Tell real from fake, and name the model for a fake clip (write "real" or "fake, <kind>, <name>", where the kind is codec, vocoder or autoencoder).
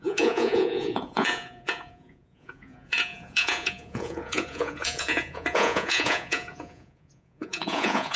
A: fake, vocoder, Vocos